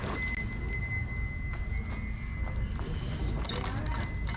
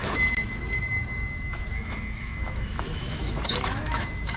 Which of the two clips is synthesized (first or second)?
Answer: second